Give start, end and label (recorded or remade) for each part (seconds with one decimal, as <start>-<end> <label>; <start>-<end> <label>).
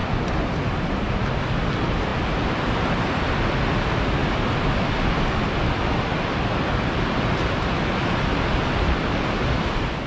0.0-10.1 recorded